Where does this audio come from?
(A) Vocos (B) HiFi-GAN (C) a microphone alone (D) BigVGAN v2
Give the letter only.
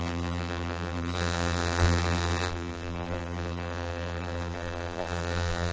D